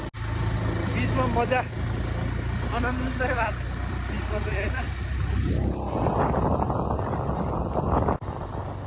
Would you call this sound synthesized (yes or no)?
no